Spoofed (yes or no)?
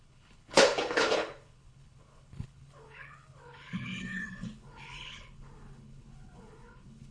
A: yes